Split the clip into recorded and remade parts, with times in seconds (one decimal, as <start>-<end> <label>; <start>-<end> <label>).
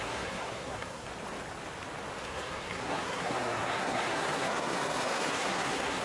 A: 0.0-1.1 remade; 1.1-2.2 recorded; 2.2-6.0 remade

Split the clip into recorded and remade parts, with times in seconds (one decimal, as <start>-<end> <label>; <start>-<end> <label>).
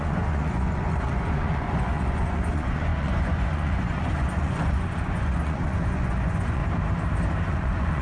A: 0.0-6.6 remade; 6.6-7.5 recorded; 7.5-8.0 remade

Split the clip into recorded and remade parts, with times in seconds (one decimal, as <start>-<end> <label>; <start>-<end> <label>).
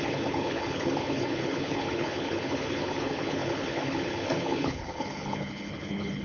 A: 0.0-6.2 remade